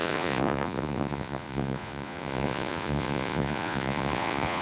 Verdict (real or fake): fake